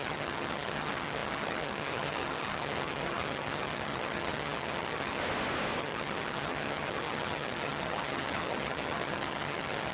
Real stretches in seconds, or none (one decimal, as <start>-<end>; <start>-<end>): 5.2-5.8